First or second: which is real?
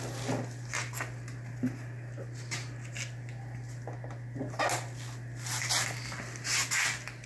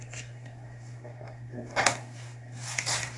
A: first